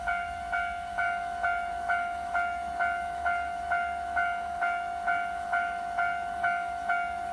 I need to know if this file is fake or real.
fake